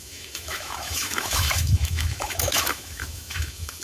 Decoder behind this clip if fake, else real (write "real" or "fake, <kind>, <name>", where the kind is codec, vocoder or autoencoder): fake, autoencoder, DAC-VAE